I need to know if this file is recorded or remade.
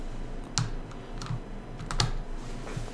recorded